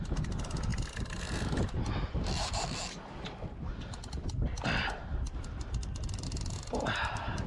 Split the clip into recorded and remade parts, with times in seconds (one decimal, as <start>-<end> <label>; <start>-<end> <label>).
0.0-7.5 recorded